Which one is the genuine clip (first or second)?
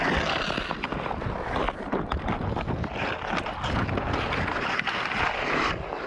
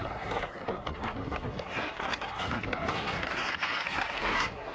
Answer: first